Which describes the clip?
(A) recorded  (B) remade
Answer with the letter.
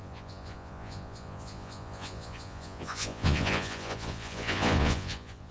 B